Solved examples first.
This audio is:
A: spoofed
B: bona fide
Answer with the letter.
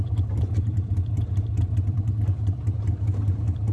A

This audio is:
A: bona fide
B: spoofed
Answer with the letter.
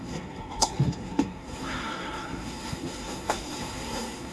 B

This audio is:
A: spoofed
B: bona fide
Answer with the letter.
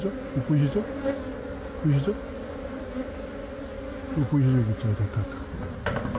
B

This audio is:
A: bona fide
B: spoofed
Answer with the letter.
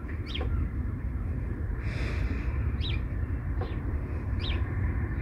B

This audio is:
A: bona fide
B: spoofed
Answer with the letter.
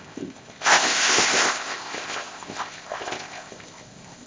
B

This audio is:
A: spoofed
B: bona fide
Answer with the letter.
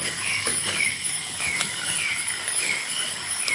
A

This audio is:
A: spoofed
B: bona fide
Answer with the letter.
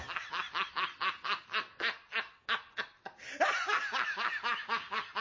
B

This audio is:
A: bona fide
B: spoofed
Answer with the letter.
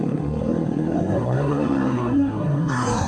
B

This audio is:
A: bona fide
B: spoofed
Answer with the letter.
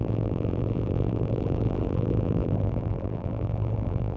B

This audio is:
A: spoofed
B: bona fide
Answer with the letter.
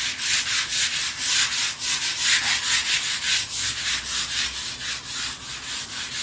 B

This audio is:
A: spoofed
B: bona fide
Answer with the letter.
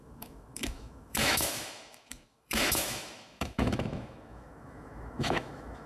A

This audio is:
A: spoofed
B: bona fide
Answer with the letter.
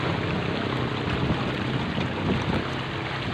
B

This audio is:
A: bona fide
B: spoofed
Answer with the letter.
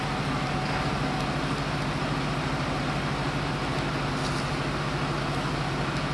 A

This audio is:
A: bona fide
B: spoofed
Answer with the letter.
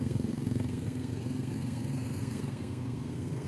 B